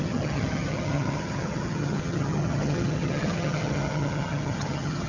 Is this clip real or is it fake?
fake